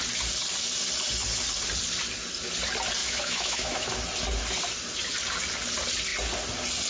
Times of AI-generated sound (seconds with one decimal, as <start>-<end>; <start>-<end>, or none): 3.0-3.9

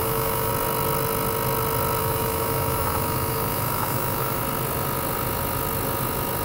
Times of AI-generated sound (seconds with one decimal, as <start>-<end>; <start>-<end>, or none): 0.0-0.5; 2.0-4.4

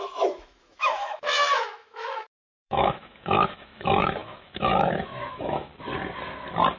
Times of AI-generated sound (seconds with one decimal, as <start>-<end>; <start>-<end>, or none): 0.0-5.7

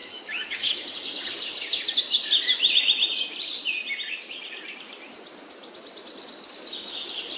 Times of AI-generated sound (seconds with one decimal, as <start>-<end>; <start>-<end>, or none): 0.0-0.9

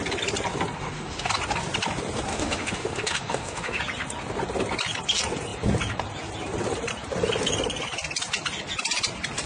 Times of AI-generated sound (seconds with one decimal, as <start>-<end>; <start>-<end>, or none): 0.8-1.3; 2.3-3.8

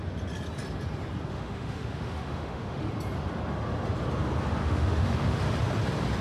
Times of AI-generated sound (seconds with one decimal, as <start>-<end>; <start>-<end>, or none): 1.3-2.9; 4.6-5.4

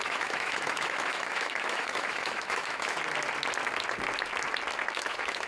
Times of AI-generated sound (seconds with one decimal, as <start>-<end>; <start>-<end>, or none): 0.0-3.0; 4.9-5.5